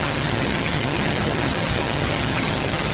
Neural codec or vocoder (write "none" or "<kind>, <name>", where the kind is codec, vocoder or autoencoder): vocoder, HiFi-GAN